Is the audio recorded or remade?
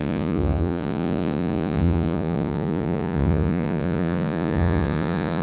remade